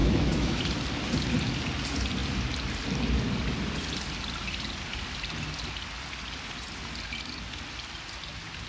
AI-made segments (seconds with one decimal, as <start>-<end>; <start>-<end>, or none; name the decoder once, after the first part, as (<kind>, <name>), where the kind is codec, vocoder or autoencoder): 0.0-0.6 (autoencoder, DAC-VAE)